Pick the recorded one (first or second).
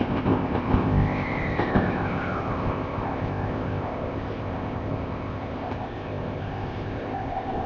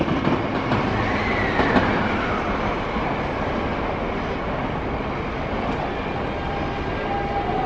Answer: second